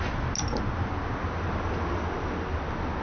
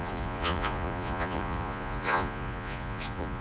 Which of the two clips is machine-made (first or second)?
second